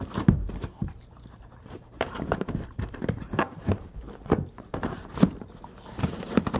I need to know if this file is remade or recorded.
remade